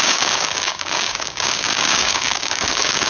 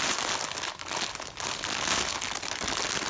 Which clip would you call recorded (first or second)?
second